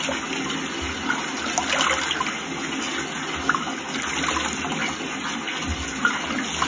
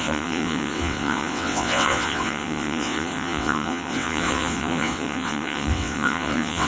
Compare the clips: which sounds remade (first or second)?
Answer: second